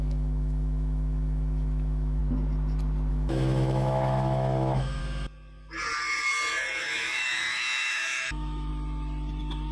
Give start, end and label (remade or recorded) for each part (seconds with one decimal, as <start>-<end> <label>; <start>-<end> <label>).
0.0-2.2 remade; 2.2-3.1 recorded; 3.1-5.0 remade; 5.0-6.8 recorded; 6.8-8.7 remade; 8.7-9.7 recorded